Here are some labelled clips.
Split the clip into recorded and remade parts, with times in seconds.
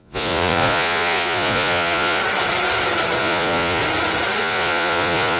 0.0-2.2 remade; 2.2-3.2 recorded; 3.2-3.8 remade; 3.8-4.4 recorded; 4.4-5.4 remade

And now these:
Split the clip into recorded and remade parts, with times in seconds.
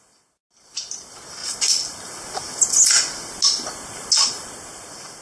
0.0-5.2 recorded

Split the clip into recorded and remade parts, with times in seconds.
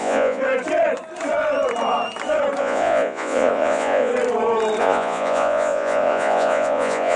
0.0-0.4 remade; 0.4-2.6 recorded; 2.6-4.1 remade; 4.1-4.8 recorded; 4.8-7.2 remade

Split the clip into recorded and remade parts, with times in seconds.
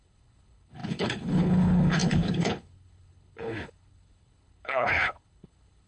0.0-5.9 remade